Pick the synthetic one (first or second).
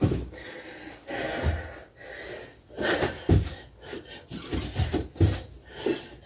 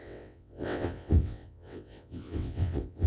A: second